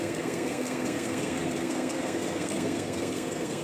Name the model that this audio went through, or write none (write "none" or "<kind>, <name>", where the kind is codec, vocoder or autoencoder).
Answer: codec, SNAC